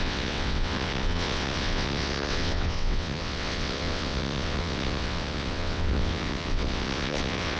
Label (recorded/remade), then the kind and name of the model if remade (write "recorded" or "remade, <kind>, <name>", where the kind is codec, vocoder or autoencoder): remade, vocoder, WaveNeXt